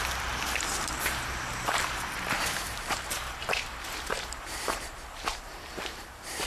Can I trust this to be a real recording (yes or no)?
no